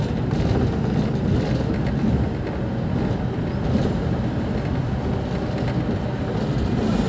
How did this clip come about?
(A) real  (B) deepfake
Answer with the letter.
A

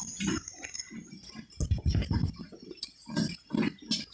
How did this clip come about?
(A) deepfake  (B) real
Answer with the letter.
B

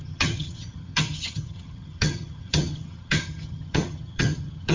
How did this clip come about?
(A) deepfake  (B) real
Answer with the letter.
A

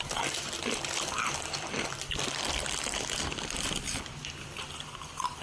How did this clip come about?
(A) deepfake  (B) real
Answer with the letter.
A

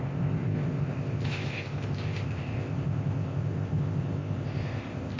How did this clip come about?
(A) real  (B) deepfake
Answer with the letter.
B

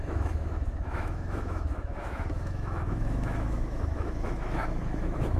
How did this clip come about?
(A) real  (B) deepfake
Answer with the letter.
B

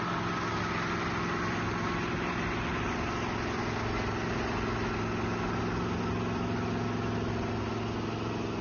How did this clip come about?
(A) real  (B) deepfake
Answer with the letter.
A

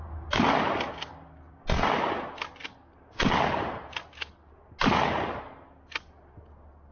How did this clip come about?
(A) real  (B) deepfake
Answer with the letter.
A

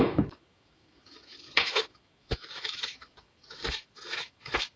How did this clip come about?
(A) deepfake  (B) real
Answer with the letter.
A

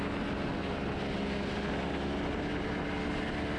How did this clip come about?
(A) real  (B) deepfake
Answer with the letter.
A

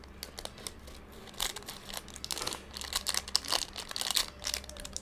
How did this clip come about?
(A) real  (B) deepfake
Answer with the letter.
A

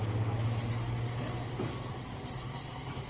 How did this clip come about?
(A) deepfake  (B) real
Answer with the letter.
B